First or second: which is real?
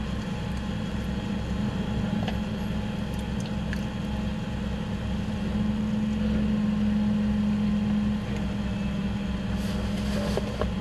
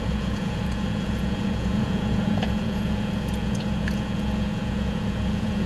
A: first